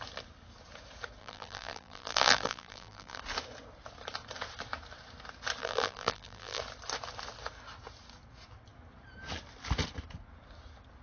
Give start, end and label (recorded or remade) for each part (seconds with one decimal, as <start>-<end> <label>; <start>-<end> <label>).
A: 0.0-1.2 recorded; 1.2-3.2 remade; 3.2-5.6 recorded; 5.6-6.6 remade; 6.6-11.0 recorded